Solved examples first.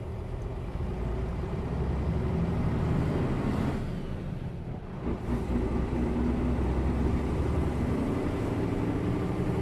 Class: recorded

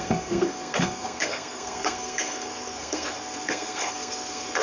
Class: remade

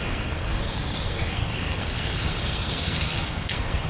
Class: remade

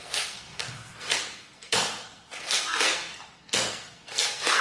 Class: remade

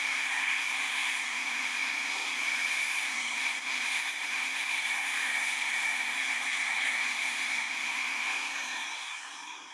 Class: remade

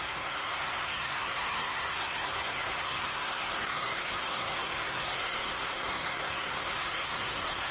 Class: remade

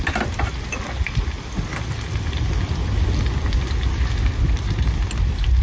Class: recorded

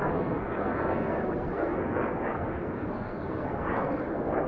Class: remade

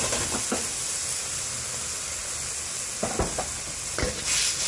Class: recorded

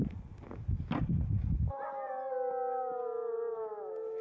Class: recorded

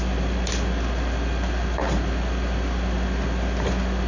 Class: recorded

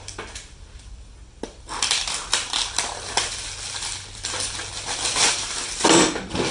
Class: recorded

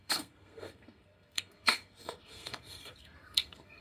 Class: remade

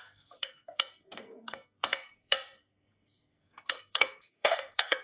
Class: remade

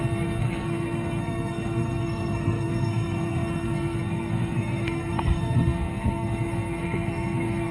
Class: remade